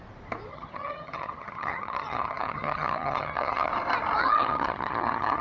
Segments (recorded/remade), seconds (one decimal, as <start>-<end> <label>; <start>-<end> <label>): 0.0-0.5 recorded; 0.5-3.7 remade; 3.7-4.2 recorded; 4.2-5.4 remade